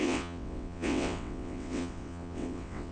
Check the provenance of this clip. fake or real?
fake